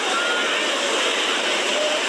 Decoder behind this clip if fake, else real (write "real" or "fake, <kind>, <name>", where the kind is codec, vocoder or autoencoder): real